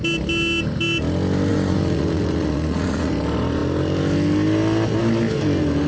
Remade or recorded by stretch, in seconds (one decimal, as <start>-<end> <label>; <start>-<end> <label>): 0.0-1.5 recorded; 1.5-3.1 remade; 3.1-5.9 recorded